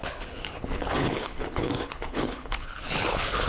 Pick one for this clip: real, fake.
fake